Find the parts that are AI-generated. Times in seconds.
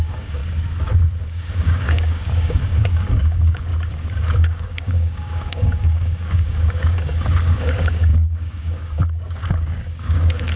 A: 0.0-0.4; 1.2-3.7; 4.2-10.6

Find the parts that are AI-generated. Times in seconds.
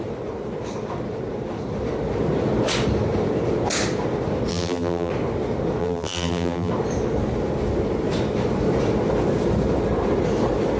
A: 4.5-5.1; 5.8-6.7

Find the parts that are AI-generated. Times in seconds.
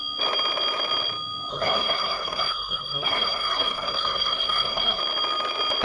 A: 1.5-5.0